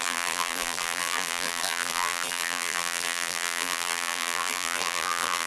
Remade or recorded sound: remade